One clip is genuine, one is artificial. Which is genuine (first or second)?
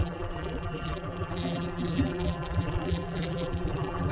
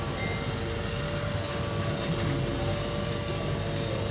second